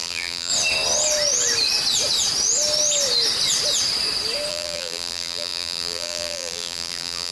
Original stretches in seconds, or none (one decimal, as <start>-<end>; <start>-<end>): 0.5-4.5